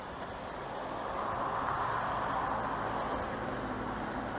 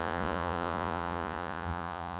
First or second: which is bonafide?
first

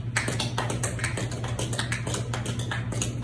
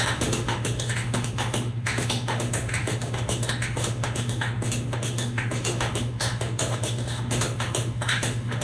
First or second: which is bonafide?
first